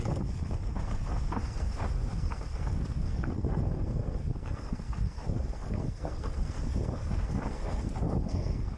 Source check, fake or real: fake